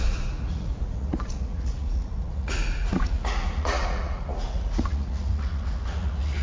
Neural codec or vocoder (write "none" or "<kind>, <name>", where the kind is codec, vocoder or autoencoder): vocoder, Vocos